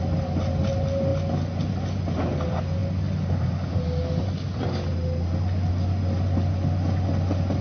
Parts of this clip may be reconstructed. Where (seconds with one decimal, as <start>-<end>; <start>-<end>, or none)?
none